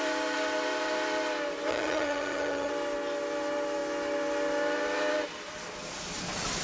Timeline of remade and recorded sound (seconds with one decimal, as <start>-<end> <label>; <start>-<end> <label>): 0.0-1.7 recorded; 1.7-2.7 remade; 2.7-6.6 recorded